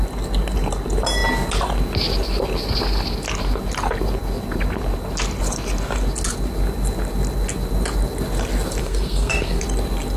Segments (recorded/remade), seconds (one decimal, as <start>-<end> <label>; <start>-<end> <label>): 0.0-8.8 recorded; 8.8-9.6 remade; 9.6-10.2 recorded